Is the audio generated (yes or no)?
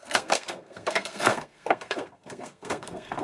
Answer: yes